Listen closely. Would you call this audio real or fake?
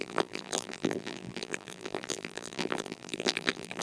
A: fake